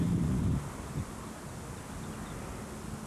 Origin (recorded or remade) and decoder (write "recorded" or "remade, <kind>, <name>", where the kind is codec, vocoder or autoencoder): recorded